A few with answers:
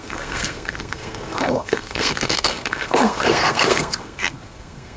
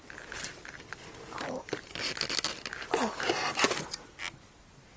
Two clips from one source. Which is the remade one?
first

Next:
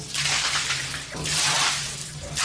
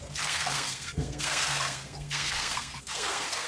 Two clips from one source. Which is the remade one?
second